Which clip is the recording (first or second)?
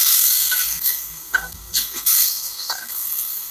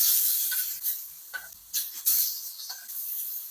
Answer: second